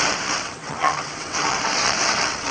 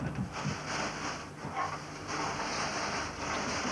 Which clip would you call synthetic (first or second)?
first